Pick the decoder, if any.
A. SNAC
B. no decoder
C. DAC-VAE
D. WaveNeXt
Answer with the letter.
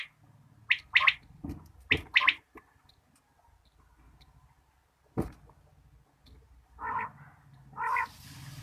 B